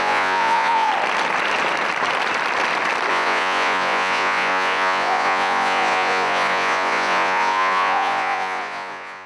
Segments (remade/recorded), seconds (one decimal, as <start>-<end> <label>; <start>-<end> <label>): 0.0-0.9 remade; 0.9-3.1 recorded; 3.1-9.3 remade